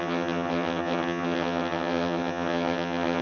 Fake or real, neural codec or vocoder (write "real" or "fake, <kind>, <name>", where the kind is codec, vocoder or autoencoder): fake, vocoder, HiFi-GAN